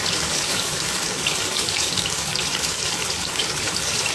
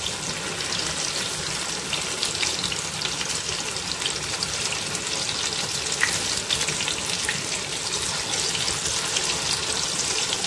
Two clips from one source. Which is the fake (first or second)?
first